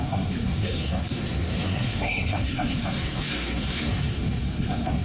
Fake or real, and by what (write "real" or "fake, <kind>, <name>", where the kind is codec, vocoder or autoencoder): fake, codec, SNAC